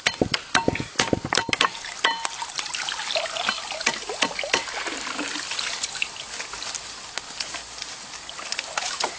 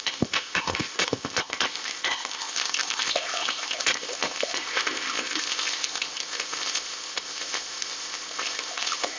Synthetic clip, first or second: second